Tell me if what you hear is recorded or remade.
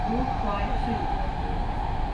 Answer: recorded